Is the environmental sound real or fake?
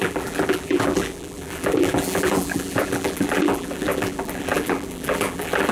fake